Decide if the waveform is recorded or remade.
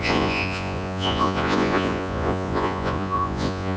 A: remade